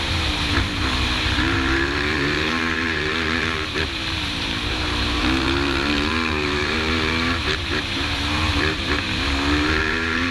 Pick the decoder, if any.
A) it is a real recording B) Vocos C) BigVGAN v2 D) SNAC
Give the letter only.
C